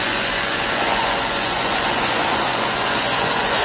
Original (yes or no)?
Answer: no